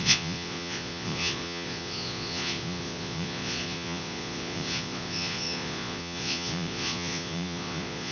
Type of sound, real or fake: fake